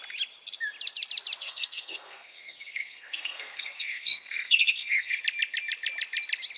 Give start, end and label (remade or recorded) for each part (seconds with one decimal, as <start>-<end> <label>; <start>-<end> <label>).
0.0-1.4 recorded; 1.4-5.2 remade; 5.2-6.6 recorded